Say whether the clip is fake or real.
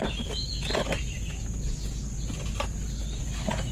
real